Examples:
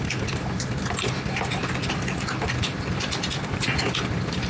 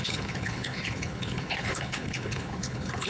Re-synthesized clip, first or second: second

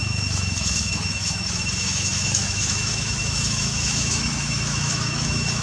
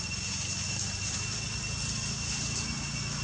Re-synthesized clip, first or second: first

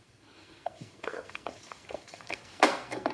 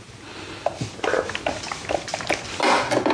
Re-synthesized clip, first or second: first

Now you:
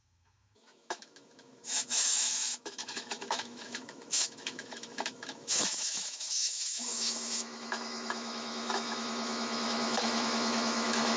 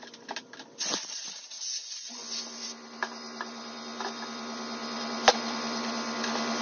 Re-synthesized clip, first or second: first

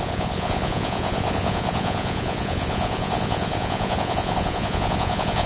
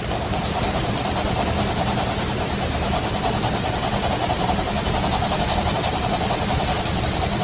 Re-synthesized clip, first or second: first